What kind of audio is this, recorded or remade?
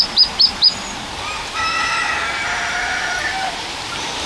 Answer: recorded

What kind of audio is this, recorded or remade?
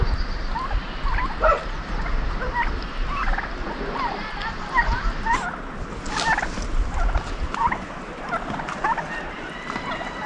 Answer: recorded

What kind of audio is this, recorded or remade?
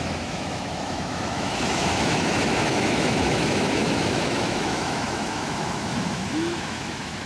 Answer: remade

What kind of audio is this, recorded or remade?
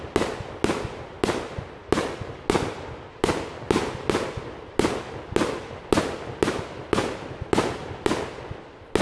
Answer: recorded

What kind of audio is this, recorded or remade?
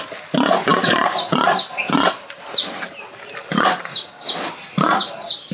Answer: recorded